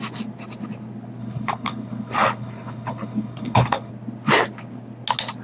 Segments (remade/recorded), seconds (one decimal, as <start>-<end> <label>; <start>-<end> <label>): 0.0-1.2 recorded; 1.2-3.9 remade; 3.9-5.4 recorded